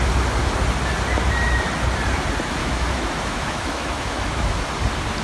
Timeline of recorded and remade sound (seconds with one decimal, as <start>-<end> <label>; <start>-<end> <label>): 0.0-2.6 recorded; 2.6-4.6 remade; 4.6-5.2 recorded